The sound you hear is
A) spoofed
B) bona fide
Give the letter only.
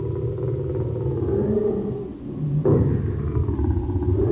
B